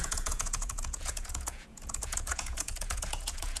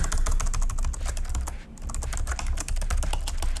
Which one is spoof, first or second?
first